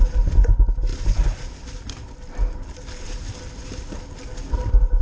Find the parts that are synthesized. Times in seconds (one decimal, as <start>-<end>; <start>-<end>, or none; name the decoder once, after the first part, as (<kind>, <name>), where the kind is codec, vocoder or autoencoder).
none